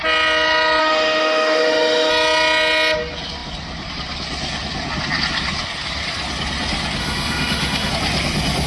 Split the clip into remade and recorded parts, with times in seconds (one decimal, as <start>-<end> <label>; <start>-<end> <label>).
0.0-0.8 recorded; 0.8-2.1 remade; 2.1-7.0 recorded; 7.0-7.9 remade; 7.9-8.7 recorded